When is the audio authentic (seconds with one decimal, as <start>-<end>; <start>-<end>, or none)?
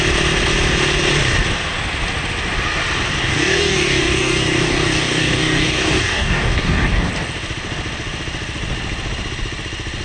0.0-3.2; 7.1-10.0